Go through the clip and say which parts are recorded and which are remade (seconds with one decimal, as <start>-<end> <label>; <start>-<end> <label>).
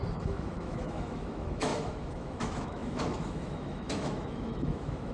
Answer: 0.0-5.1 remade